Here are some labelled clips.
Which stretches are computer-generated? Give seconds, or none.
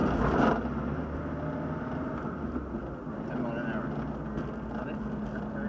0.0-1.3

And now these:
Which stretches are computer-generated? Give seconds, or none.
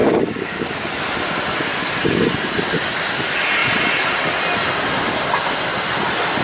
0.0-0.9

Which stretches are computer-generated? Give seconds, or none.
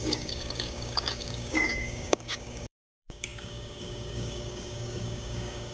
0.0-5.7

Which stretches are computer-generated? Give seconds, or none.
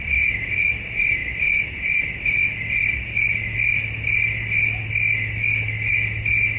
none